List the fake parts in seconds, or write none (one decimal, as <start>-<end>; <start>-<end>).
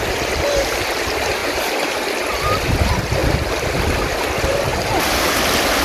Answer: 0.0-1.4; 2.4-3.2; 4.3-4.7